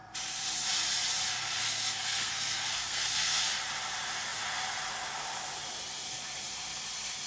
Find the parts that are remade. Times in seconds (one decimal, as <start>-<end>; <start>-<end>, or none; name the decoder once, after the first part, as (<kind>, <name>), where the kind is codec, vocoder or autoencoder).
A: 1.4-3.4 (codec, SNAC)